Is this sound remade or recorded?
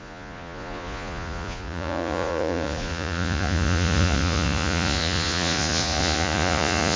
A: remade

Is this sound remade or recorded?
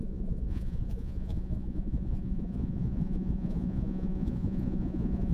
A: remade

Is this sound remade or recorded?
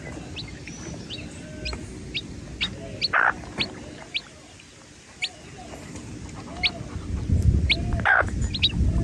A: recorded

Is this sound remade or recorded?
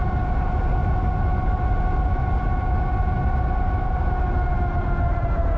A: recorded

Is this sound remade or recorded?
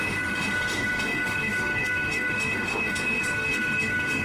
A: remade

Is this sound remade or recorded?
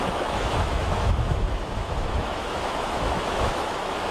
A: remade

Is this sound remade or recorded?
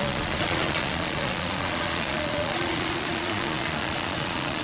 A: remade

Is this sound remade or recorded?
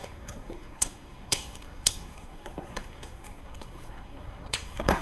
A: remade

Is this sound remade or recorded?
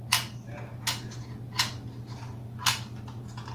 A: recorded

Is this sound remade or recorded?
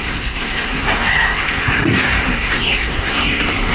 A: remade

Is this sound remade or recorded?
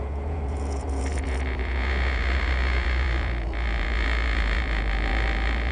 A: remade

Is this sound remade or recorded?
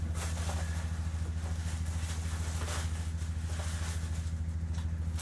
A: recorded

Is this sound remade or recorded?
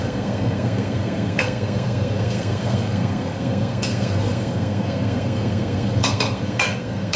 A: remade